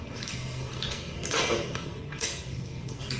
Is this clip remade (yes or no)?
yes